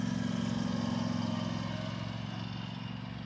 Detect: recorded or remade recorded